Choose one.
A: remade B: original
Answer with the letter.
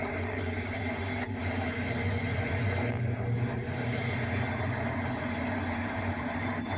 B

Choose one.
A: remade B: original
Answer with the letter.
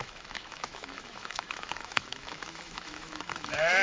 A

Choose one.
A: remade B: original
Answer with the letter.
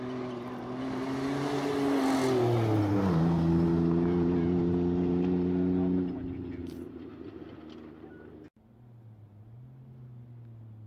B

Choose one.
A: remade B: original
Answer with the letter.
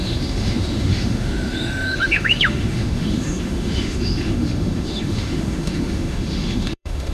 A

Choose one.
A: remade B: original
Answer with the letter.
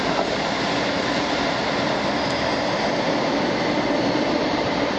B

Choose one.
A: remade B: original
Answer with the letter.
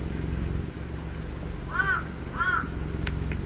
B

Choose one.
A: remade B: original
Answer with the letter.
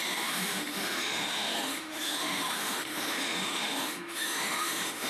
A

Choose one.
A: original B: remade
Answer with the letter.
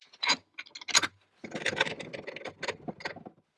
A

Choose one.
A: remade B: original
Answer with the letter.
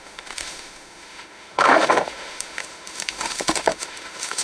A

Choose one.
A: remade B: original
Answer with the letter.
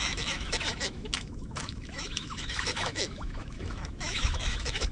A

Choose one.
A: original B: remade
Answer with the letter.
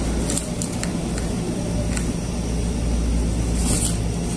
A